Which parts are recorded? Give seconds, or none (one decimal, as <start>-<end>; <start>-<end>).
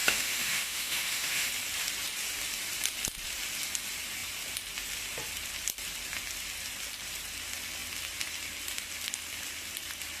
1.5-10.2